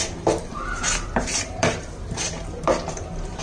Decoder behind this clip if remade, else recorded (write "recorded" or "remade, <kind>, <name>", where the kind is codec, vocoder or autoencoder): remade, vocoder, BigVGAN v2